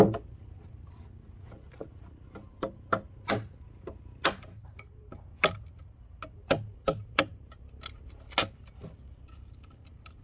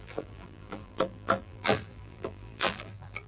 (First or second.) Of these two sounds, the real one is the first